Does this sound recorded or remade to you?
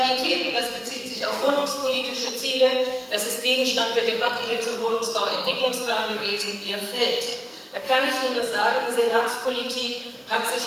remade